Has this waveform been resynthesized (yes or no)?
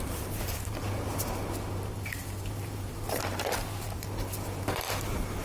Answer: yes